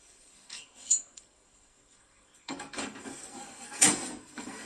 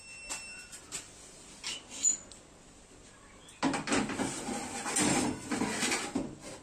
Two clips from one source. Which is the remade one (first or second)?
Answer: first